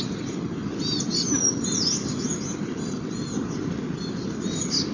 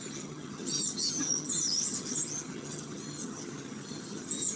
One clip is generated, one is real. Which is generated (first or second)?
second